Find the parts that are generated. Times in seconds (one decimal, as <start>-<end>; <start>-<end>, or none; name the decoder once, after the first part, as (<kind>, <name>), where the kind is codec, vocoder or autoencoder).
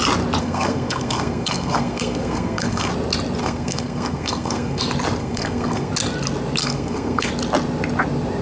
0.4-2.9 (codec, SNAC); 3.4-4.8; 5.2-5.9; 6.6-7.3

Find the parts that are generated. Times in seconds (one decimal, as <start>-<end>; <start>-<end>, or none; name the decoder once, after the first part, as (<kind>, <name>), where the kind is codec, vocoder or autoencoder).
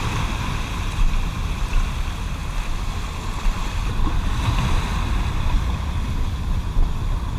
none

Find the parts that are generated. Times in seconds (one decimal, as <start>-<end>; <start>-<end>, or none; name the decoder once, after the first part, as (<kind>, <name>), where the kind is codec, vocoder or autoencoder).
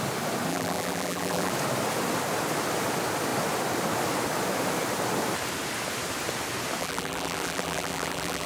0.5-1.5 (vocoder, BigVGAN v2); 6.8-8.5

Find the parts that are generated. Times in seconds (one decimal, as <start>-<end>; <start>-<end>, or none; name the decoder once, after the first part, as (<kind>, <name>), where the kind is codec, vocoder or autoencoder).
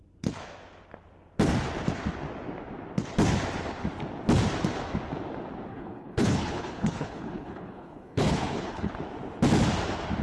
5.7-8.9 (codec, HILCodec)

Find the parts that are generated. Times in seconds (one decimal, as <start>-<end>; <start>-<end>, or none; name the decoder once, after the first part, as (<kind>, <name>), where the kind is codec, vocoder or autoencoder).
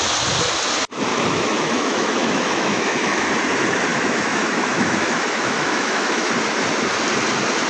1.1-3.3 (autoencoder, DAC-VAE); 3.9-6.3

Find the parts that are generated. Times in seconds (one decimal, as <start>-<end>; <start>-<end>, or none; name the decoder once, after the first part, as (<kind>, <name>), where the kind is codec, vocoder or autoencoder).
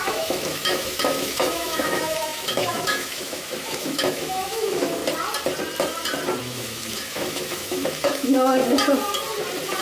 0.0-5.0 (autoencoder, DAC-VAE); 6.4-8.6